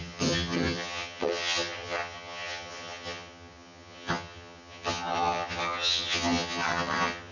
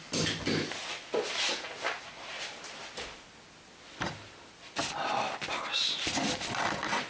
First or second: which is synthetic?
first